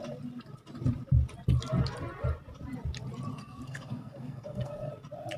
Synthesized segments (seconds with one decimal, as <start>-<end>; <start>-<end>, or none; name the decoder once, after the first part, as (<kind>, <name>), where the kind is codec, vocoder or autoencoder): 3.3-4.9 (codec, SNAC)